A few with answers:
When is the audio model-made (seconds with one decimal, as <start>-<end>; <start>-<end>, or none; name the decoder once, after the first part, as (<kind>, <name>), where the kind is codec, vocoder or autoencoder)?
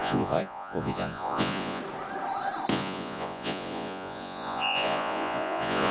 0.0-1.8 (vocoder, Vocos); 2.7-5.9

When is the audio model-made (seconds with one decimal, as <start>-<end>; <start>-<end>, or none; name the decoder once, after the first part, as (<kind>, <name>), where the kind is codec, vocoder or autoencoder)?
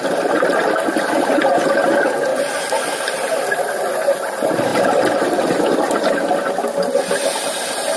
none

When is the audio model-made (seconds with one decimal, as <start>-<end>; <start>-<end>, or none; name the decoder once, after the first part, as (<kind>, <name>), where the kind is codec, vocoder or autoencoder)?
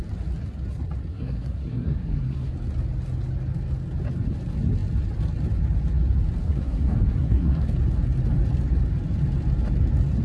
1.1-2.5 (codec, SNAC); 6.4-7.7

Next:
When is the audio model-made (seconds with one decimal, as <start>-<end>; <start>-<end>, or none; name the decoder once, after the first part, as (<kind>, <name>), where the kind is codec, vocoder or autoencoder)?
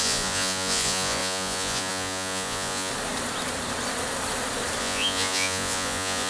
0.0-2.9 (vocoder, Vocos); 4.8-6.3